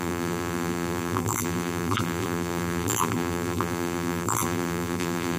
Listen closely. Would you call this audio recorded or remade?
remade